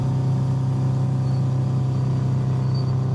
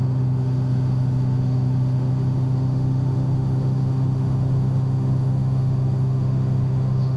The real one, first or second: first